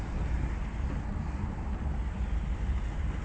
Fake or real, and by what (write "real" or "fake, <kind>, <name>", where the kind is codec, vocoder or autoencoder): real